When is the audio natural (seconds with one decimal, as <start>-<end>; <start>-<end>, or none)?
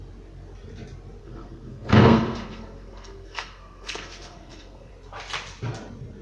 0.0-1.2; 4.9-6.2